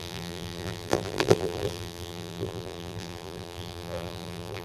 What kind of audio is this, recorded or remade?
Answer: remade